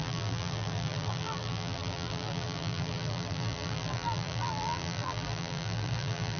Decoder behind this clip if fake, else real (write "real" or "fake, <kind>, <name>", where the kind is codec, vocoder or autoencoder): fake, vocoder, BigVGAN v2